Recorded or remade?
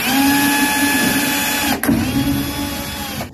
recorded